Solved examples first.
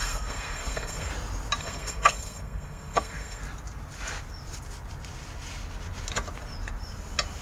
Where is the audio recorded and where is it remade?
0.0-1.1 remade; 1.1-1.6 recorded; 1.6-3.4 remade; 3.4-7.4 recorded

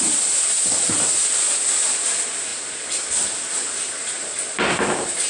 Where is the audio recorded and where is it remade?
0.0-5.3 recorded

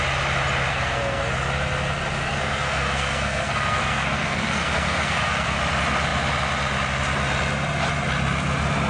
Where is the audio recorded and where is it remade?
0.0-0.7 recorded; 0.7-1.2 remade; 1.2-2.2 recorded; 2.2-5.6 remade; 5.6-8.9 recorded

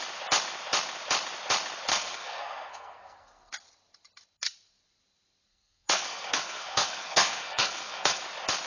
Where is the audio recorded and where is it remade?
0.0-1.9 recorded; 1.9-3.5 remade; 3.5-5.5 recorded; 5.5-8.2 remade; 8.2-8.7 recorded

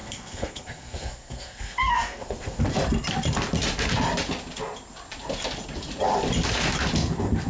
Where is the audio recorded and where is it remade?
0.0-2.6 remade; 2.6-7.5 recorded

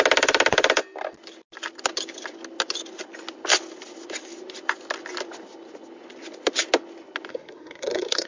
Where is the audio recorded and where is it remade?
0.0-7.3 recorded; 7.3-8.3 remade